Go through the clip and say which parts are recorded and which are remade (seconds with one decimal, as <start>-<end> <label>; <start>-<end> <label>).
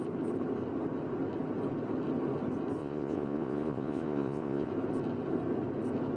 0.0-2.8 recorded; 2.8-4.7 remade; 4.7-6.2 recorded